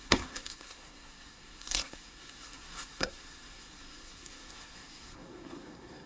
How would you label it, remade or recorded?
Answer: remade